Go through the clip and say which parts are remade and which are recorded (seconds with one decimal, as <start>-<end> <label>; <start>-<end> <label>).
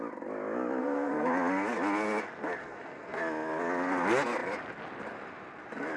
0.0-0.8 recorded; 0.8-1.3 remade; 1.3-2.6 recorded; 2.6-3.2 remade; 3.2-6.0 recorded